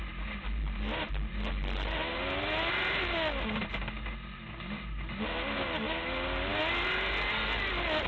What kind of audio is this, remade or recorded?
recorded